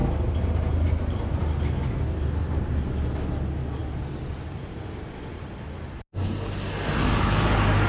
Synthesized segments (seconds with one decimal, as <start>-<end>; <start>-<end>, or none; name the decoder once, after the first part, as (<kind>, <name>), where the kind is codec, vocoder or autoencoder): none